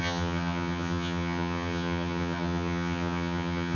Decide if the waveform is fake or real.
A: fake